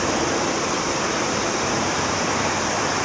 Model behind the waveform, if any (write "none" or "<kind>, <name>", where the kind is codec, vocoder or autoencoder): vocoder, BigVGAN v2